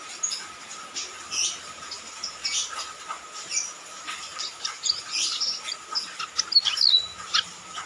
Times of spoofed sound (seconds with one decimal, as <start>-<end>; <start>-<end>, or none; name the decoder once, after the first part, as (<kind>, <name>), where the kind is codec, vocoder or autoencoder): none